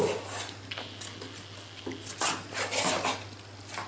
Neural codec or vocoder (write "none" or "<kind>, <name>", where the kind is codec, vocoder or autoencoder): none